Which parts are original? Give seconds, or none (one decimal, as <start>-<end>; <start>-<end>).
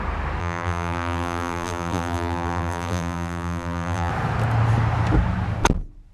0.0-0.4; 4.1-6.1